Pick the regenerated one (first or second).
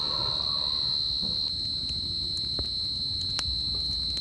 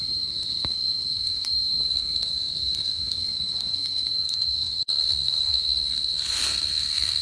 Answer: second